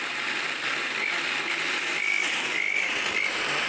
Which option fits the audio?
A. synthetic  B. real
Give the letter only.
B